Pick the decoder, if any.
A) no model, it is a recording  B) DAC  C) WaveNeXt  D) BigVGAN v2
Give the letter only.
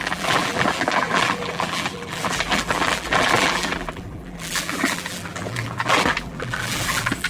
D